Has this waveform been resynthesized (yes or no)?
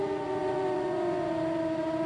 yes